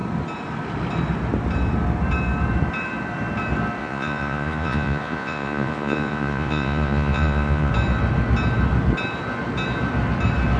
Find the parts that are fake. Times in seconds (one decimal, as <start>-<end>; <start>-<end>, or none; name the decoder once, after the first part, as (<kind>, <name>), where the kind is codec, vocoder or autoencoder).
3.8-7.7 (vocoder, Vocos)